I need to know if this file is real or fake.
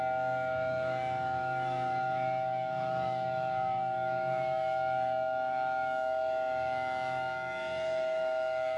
fake